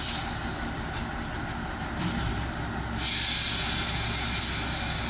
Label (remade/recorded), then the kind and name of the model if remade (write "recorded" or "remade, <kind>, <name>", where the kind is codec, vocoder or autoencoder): recorded